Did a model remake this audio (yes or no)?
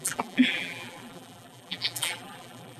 yes